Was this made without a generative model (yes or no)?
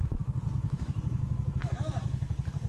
no